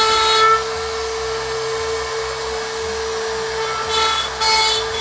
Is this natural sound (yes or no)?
yes